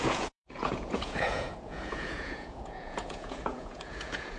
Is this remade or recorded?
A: remade